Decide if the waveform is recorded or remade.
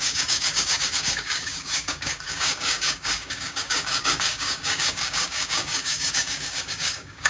remade